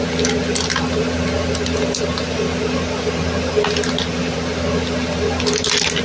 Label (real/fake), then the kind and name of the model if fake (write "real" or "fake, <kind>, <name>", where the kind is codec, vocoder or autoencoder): real